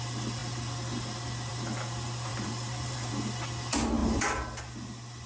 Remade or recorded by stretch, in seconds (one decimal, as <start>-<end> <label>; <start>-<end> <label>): 0.0-2.3 recorded; 2.3-3.1 remade; 3.1-4.0 recorded; 4.0-4.6 remade; 4.6-5.3 recorded